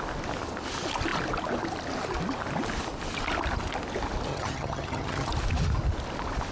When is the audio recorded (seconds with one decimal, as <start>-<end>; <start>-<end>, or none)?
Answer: 0.0-4.3; 5.3-6.5